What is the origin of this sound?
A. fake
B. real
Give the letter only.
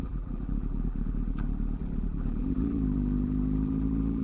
A